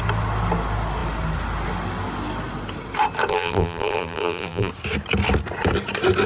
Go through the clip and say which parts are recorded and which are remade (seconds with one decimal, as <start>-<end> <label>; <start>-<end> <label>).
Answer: 0.0-3.3 recorded; 3.3-4.7 remade; 4.7-6.3 recorded